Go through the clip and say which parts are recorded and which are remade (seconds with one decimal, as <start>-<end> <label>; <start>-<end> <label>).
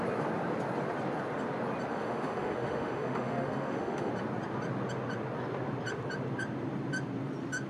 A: 0.0-1.9 recorded; 1.9-4.1 remade; 4.1-7.7 recorded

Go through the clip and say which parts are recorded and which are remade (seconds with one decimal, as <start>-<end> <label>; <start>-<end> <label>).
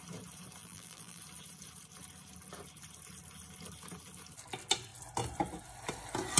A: 0.0-0.6 recorded; 0.6-1.2 remade; 1.2-6.4 recorded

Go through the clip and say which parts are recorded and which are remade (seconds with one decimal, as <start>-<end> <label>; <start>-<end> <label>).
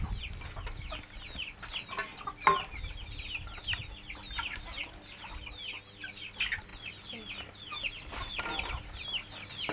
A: 0.0-9.7 recorded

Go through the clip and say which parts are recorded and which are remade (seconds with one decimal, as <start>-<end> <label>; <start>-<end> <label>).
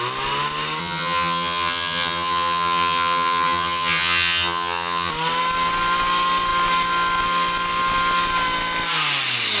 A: 0.0-0.8 recorded; 0.8-5.1 remade; 5.1-9.6 recorded